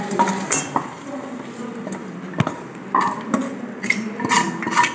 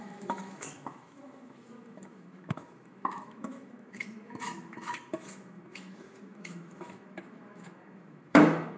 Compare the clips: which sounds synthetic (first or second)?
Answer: second